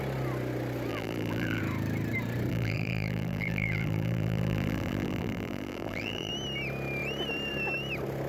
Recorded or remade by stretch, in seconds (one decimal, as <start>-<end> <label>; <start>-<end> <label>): 0.0-0.9 recorded; 0.9-1.6 remade; 1.6-2.5 recorded; 2.5-6.3 remade; 6.3-8.3 recorded

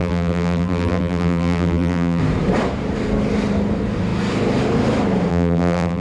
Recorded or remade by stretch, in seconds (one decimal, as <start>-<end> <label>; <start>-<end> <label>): 0.0-2.2 remade; 2.2-5.3 recorded; 5.3-6.0 remade

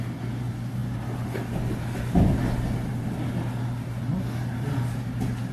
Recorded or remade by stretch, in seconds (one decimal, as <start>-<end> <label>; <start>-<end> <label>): 0.0-5.5 recorded

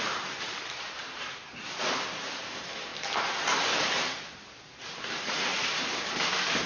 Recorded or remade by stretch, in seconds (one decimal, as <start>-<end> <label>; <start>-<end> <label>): 0.0-6.7 remade